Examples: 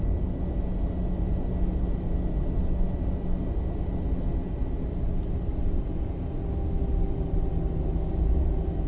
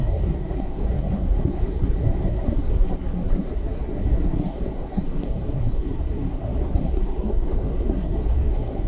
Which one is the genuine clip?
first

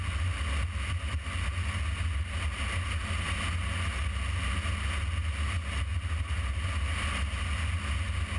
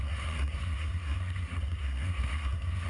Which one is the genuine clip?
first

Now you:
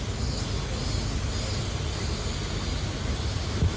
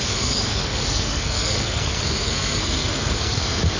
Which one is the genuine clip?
first